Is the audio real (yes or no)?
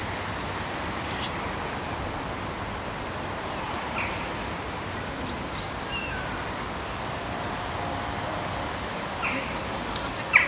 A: yes